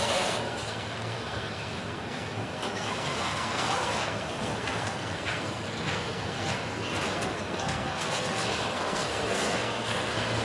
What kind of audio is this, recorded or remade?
remade